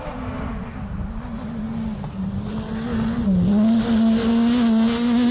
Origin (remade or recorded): recorded